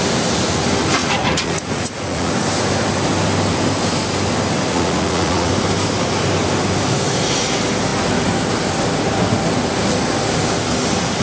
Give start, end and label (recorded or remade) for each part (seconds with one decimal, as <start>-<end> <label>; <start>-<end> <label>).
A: 0.0-1.0 recorded; 1.0-2.3 remade; 2.3-4.7 recorded; 4.7-5.5 remade; 5.5-11.2 recorded